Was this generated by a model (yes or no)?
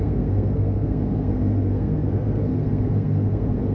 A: yes